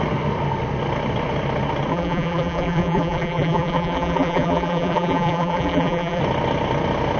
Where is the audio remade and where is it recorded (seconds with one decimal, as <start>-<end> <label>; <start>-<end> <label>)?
0.0-1.9 recorded; 1.9-6.2 remade; 6.2-7.2 recorded